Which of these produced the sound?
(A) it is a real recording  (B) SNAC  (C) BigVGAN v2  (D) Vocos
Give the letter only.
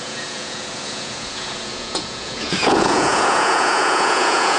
D